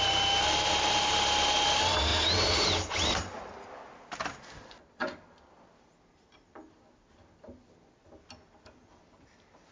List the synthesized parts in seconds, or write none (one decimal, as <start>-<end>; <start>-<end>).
none